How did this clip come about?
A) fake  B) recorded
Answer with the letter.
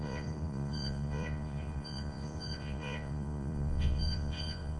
A